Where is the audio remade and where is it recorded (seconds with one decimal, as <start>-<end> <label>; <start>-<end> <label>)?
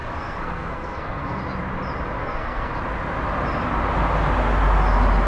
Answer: 0.0-1.4 remade; 1.4-2.2 recorded; 2.2-2.7 remade; 2.7-5.3 recorded